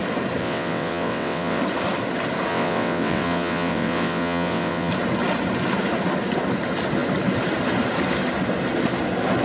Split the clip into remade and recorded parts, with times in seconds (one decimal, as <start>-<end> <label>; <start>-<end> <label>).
0.0-0.4 recorded; 0.4-1.6 remade; 1.6-2.5 recorded; 2.5-4.9 remade; 4.9-9.4 recorded